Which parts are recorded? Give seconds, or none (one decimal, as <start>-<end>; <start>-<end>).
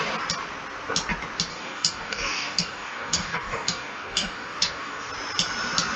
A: 0.0-1.5; 5.1-6.0